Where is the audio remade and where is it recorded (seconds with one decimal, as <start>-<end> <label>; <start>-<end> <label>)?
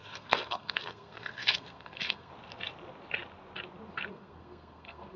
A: 0.0-2.3 remade; 2.3-4.1 recorded; 4.1-5.2 remade